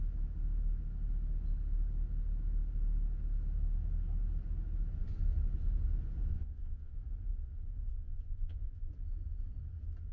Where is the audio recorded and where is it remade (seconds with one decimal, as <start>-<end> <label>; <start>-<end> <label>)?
0.0-6.3 recorded; 6.3-7.0 remade; 7.0-7.9 recorded; 7.9-8.9 remade; 8.9-10.1 recorded